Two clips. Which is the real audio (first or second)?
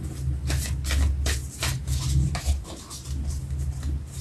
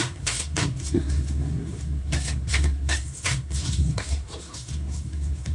first